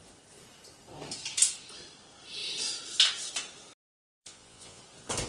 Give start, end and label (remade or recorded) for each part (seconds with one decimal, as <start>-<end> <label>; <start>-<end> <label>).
0.0-4.2 recorded; 4.2-4.8 remade; 4.8-5.3 recorded